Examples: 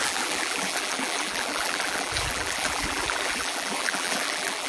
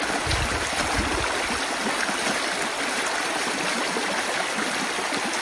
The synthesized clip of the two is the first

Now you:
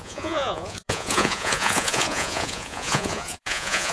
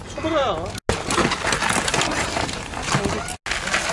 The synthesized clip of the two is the first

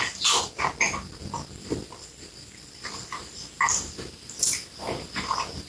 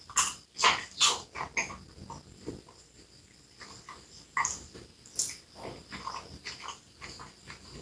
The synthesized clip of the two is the first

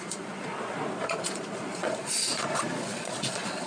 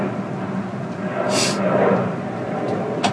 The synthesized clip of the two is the first